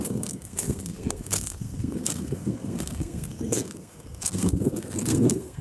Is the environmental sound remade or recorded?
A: remade